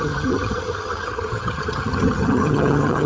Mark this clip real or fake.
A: fake